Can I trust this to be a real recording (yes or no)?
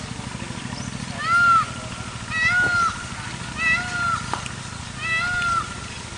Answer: yes